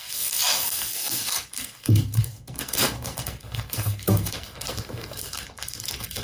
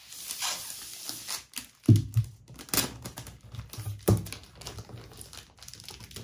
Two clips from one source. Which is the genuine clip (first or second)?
second